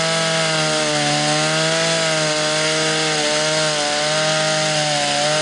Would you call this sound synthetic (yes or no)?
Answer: no